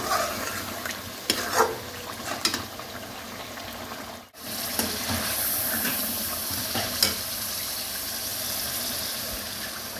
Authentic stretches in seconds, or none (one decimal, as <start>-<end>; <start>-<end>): 0.0-10.0